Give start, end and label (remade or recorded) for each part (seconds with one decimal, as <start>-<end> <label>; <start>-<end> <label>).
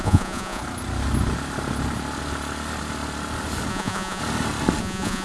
0.0-0.6 remade; 0.6-3.7 recorded; 3.7-4.2 remade; 4.2-4.8 recorded; 4.8-5.2 remade